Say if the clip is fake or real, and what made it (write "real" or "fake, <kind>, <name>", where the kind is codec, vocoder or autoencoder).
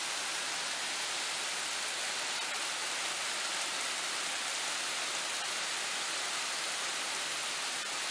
real